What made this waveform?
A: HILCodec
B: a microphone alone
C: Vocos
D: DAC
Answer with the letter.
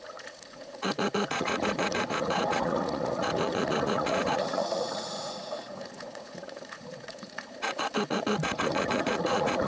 C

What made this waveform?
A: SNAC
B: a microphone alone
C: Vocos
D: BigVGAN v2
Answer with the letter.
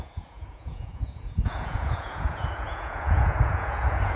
C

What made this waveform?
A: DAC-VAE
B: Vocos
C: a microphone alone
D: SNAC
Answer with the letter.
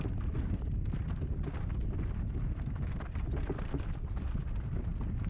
C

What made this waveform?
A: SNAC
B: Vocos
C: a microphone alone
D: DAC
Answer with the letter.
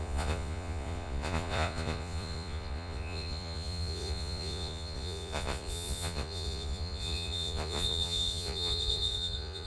B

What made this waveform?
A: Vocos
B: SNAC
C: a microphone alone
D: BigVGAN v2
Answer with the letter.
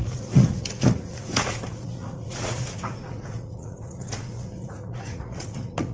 A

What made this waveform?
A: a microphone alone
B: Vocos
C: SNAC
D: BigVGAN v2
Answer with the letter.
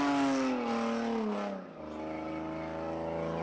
A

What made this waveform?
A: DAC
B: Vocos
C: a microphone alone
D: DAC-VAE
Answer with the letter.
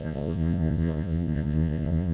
B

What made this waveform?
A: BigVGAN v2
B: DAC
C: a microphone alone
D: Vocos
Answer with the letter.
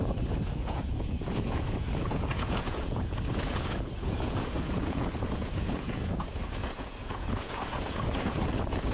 D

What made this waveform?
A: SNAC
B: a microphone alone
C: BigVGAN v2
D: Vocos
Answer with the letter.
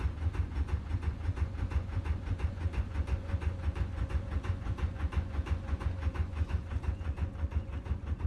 D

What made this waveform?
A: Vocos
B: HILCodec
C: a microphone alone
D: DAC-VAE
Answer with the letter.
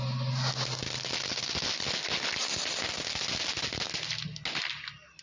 C